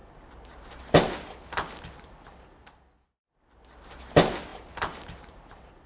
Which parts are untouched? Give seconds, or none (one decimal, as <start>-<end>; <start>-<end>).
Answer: 0.8-4.5